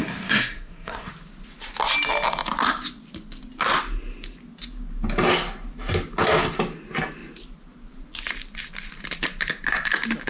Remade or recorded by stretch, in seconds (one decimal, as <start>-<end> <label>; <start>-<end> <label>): 0.0-1.1 remade; 1.1-10.3 recorded